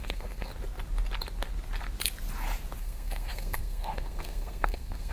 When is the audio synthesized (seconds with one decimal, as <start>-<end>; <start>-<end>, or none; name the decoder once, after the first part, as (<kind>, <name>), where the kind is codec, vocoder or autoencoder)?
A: 0.0-0.5 (codec, SNAC); 2.8-5.1